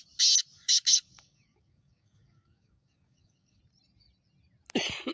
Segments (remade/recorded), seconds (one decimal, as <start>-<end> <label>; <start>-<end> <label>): 0.0-0.5 recorded; 0.5-3.6 remade; 3.6-5.1 recorded